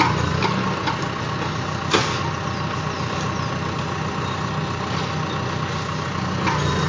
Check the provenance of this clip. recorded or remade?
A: recorded